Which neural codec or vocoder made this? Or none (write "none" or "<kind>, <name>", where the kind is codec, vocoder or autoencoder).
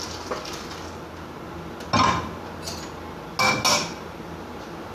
none